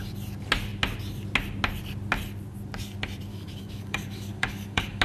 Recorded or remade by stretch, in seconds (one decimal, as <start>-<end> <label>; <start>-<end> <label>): 0.0-3.3 recorded; 3.3-5.0 remade